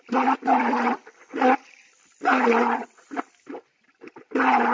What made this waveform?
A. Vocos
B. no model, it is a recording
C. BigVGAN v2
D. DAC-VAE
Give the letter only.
B